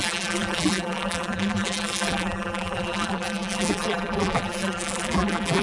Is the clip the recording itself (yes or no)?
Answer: no